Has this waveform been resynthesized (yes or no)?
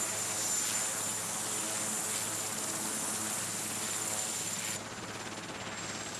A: no